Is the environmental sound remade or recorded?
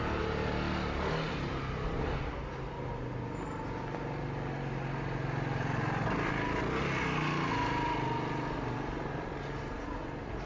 recorded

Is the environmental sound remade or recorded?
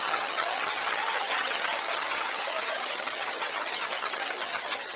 remade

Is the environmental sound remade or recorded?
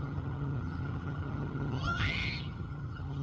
remade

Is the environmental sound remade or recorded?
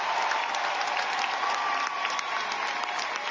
recorded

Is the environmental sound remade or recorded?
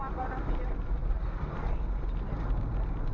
recorded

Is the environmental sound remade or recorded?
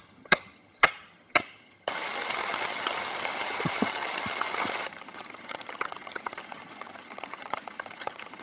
remade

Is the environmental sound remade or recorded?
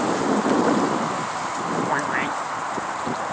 recorded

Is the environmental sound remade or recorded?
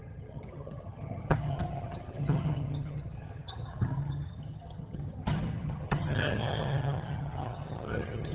remade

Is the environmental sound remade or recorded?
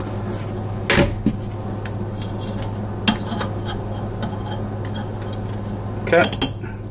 recorded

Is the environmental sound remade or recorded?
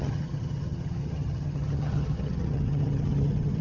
remade